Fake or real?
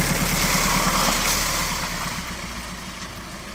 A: real